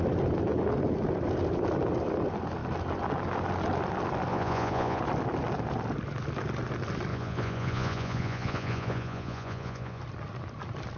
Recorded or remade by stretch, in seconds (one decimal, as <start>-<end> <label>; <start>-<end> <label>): 0.0-4.3 recorded; 4.3-5.0 remade; 5.0-7.1 recorded; 7.1-10.0 remade; 10.0-11.0 recorded